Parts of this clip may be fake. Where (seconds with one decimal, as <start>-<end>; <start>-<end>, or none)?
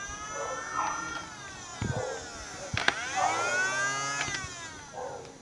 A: none